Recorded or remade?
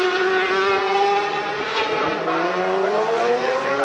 remade